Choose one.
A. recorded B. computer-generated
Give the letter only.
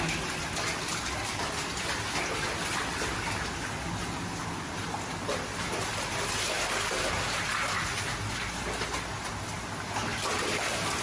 A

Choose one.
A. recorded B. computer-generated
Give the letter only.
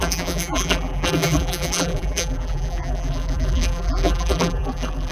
B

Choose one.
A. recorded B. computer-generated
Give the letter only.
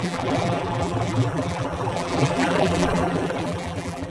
B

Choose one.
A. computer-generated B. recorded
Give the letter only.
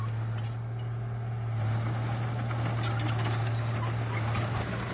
B